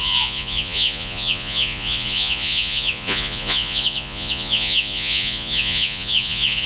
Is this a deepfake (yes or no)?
yes